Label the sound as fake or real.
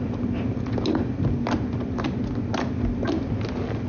real